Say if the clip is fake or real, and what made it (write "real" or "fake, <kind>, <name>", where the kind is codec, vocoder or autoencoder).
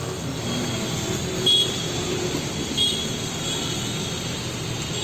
real